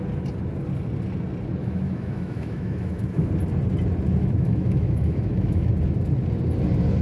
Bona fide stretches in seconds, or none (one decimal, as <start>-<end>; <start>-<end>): 0.0-1.6; 3.3-4.2; 5.7-7.0